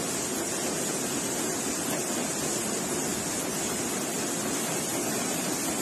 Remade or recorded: recorded